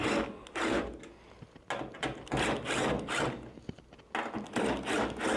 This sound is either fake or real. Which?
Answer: real